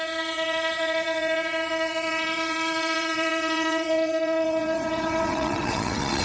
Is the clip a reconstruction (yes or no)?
yes